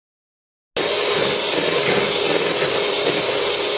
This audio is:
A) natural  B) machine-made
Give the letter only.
A